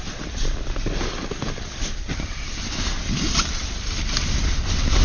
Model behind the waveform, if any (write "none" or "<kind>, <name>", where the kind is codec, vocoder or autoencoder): none